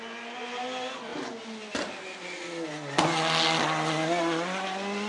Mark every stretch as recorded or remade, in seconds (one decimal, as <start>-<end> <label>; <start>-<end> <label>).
0.0-5.1 recorded